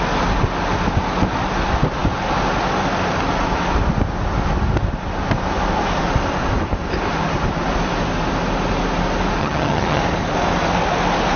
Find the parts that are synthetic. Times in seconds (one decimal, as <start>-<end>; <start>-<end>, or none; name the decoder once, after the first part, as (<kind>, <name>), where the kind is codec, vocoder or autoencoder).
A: 9.4-10.0 (vocoder, HiFi-GAN)